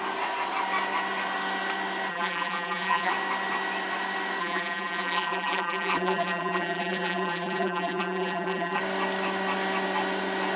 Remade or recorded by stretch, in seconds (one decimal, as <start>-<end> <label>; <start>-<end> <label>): 0.0-2.1 recorded; 2.1-3.1 remade; 3.1-4.4 recorded; 4.4-8.8 remade; 8.8-10.6 recorded